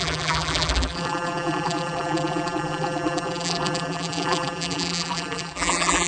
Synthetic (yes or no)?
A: yes